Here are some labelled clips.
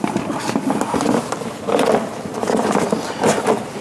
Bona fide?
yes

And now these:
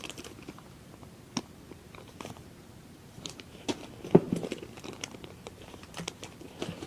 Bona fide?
no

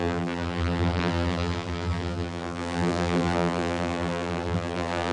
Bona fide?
no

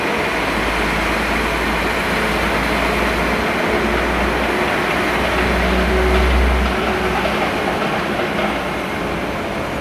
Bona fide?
yes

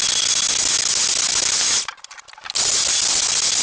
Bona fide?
yes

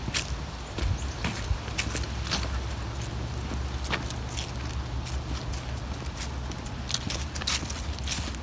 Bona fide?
yes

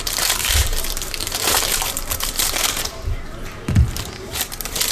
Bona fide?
no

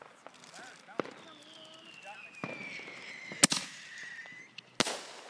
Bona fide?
yes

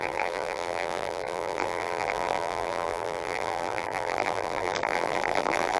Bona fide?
no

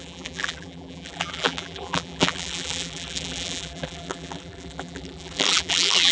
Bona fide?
no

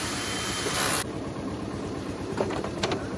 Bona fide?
no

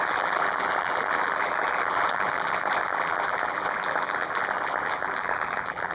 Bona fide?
no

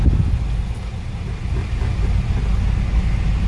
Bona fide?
yes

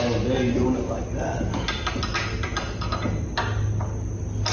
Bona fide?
yes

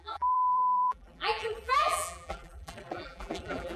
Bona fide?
no